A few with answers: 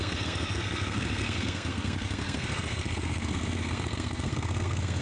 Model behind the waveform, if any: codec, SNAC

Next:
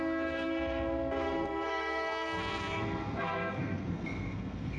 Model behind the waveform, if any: codec, SNAC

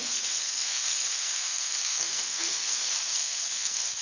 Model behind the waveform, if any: codec, SNAC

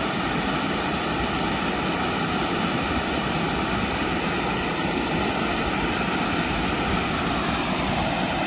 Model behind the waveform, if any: none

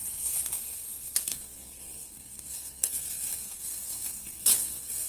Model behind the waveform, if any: codec, SNAC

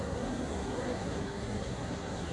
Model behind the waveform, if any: codec, SNAC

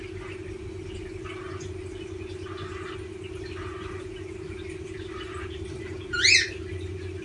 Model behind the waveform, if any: none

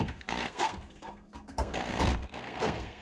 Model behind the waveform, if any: codec, SNAC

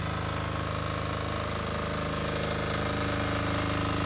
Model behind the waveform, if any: none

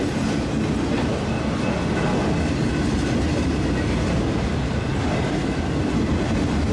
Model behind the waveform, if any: none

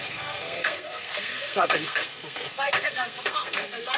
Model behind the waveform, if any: codec, SNAC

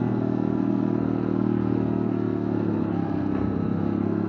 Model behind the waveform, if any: codec, SNAC